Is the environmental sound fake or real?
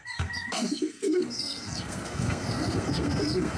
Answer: fake